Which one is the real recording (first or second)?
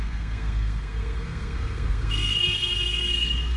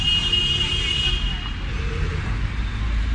second